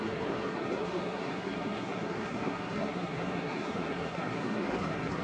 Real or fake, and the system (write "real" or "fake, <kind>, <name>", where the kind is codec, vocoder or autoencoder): fake, codec, SNAC